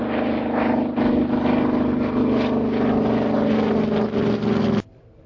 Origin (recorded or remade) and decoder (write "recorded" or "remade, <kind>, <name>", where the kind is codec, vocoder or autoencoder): recorded